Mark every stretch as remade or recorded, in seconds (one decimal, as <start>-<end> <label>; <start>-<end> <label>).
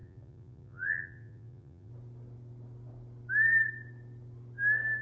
0.0-1.9 remade; 1.9-5.0 recorded